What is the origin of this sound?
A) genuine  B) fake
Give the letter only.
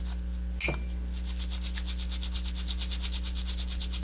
A